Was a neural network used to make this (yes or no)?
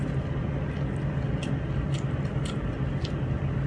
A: no